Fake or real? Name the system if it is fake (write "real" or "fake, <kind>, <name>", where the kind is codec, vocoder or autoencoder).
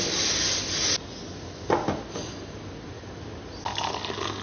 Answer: real